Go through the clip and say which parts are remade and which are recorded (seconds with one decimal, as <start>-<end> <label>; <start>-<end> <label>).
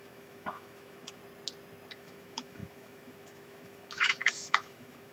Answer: 0.0-1.2 remade; 1.2-1.9 recorded; 1.9-5.1 remade